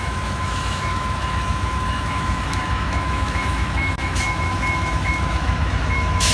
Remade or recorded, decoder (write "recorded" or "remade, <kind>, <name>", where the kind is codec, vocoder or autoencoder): remade, autoencoder, DAC-VAE